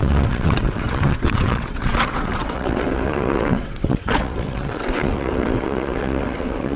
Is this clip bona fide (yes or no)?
no